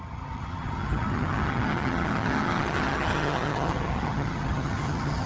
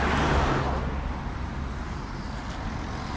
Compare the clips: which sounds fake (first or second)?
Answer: first